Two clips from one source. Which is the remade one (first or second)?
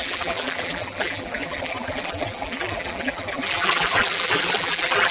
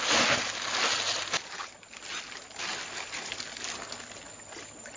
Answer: first